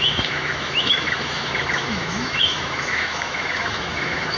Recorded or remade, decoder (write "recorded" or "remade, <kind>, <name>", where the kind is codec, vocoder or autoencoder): remade, autoencoder, DAC-VAE